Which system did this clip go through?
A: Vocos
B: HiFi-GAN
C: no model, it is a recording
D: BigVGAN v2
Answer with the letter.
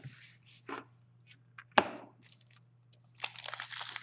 C